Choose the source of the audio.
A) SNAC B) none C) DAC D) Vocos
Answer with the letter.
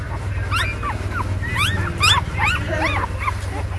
B